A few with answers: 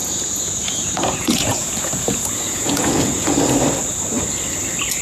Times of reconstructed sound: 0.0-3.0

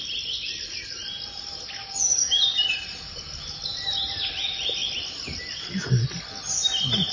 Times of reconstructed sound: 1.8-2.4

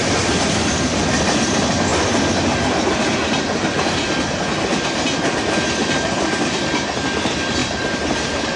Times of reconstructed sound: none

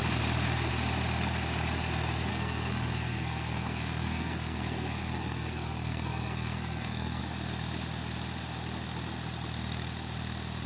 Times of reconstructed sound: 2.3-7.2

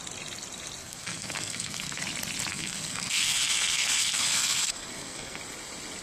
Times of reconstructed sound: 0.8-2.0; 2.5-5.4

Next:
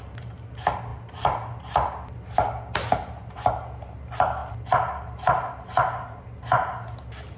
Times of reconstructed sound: 0.9-1.6; 4.4-5.5

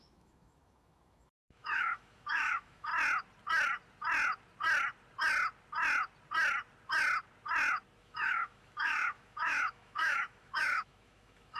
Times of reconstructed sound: 0.0-2.9; 8.0-11.6

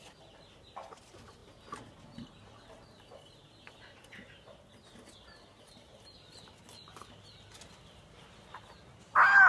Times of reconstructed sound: none